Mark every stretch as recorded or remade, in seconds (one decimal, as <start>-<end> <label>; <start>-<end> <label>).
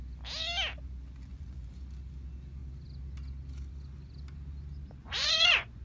0.0-1.3 recorded; 1.3-1.8 remade; 1.8-5.0 recorded; 5.0-5.8 remade